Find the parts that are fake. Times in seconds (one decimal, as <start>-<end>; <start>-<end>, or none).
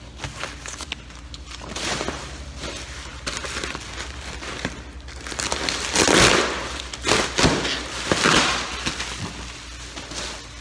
none